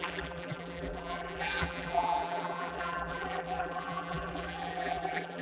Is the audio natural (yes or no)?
no